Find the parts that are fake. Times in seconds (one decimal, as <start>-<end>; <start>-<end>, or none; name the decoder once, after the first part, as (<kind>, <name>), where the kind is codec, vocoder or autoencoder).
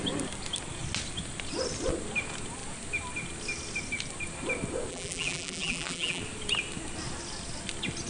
4.9-6.2 (vocoder, BigVGAN v2)